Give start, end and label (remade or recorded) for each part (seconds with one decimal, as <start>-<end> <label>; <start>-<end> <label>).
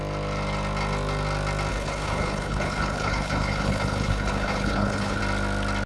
0.0-1.7 recorded; 1.7-5.2 remade; 5.2-5.9 recorded